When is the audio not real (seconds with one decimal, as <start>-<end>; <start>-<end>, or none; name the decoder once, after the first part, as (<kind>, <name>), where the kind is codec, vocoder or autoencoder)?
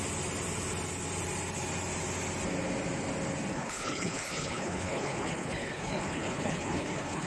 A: 3.5-7.3 (codec, HILCodec)